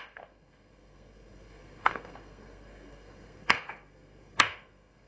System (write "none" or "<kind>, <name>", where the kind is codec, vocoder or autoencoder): codec, SNAC